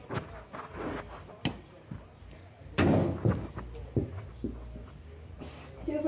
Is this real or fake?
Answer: real